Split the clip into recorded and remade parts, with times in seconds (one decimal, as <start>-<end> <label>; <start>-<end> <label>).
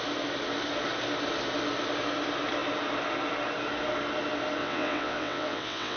0.0-4.6 recorded; 4.6-6.0 remade